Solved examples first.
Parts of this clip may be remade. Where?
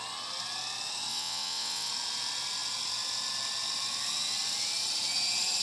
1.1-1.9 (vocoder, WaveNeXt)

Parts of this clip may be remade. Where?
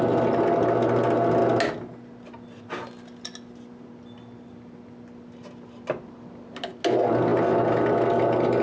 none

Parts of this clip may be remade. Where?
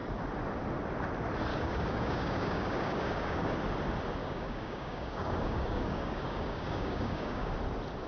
1.5-3.5 (codec, DAC); 4.2-7.5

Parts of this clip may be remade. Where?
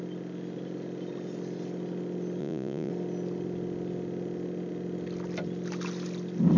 2.4-2.9 (vocoder, Vocos)